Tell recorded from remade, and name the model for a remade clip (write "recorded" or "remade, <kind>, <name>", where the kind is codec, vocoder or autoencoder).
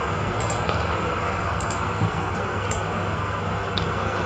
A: remade, codec, SNAC